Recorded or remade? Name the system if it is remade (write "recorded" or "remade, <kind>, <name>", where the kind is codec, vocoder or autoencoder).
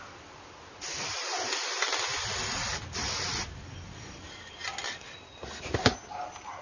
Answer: recorded